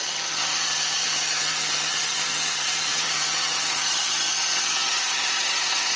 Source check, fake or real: fake